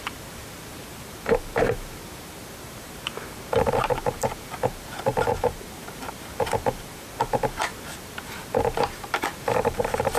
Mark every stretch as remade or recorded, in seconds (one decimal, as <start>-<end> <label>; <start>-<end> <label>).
0.0-10.2 remade